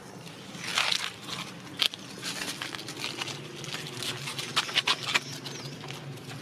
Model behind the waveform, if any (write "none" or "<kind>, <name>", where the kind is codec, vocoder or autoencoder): none